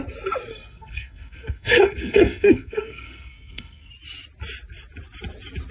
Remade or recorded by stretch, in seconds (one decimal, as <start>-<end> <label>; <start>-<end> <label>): 0.0-0.5 recorded; 0.5-3.9 remade; 3.9-5.7 recorded